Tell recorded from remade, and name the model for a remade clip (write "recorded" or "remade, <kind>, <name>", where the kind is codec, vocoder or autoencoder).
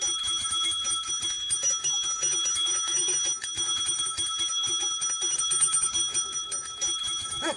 remade, autoencoder, DAC-VAE